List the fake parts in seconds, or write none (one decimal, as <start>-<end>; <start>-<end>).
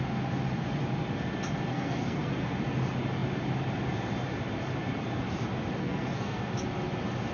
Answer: 1.7-2.3; 5.8-6.4